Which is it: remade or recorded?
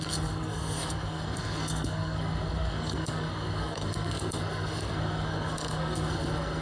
remade